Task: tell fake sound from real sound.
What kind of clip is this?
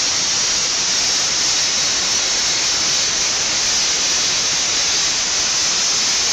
real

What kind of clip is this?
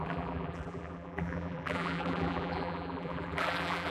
fake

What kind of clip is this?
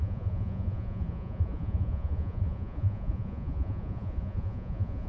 fake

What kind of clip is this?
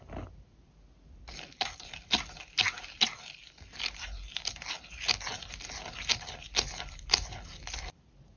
real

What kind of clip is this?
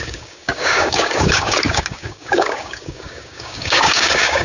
fake